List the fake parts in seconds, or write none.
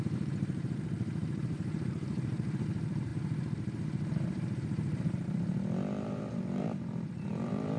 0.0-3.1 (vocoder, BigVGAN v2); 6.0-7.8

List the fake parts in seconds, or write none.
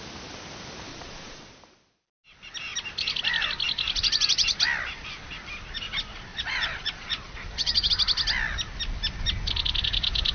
0.9-1.5 (vocoder, Vocos); 6.3-7.9